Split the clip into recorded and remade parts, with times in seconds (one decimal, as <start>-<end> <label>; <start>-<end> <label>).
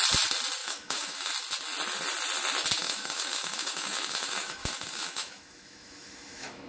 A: 0.0-0.6 recorded; 0.6-1.3 remade; 1.3-2.8 recorded; 2.8-6.7 remade